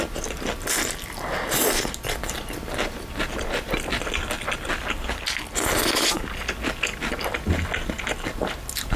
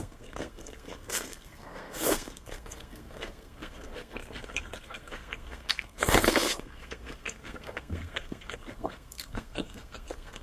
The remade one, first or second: second